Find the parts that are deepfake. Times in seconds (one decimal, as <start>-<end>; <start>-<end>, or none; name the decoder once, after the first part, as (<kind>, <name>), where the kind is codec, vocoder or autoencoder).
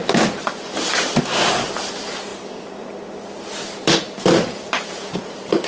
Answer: 0.0-5.7 (vocoder, BigVGAN v2)